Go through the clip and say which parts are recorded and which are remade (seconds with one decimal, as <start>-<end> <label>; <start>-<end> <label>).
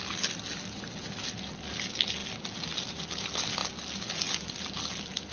0.0-5.3 recorded